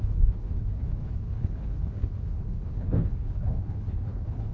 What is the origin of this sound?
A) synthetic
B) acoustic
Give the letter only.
A